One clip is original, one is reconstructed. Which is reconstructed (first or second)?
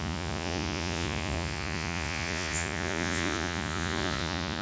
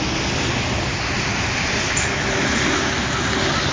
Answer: first